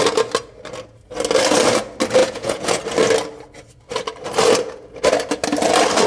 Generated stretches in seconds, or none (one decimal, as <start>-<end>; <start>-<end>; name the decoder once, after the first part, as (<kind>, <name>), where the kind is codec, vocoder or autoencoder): 2.2-2.8 (vocoder, Vocos)